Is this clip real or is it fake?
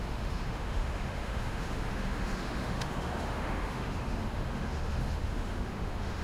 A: fake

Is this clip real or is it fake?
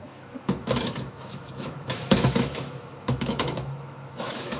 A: fake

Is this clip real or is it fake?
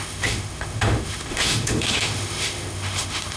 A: fake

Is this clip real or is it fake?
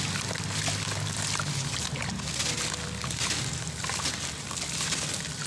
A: real